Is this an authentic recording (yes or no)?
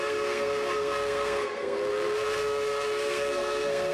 no